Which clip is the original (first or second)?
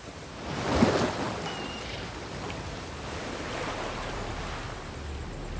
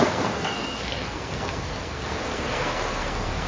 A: first